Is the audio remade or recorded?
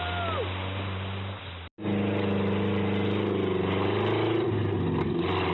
recorded